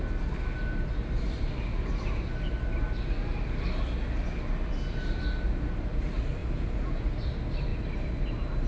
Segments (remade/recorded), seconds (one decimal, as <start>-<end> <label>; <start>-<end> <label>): 0.0-6.4 recorded; 6.4-7.0 remade; 7.0-8.7 recorded